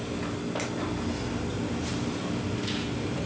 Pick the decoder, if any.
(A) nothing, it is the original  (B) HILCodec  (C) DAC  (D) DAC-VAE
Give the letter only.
A